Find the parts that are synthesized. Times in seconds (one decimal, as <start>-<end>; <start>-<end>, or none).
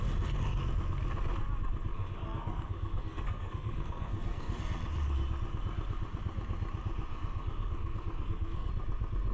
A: 1.9-4.6; 7.1-8.7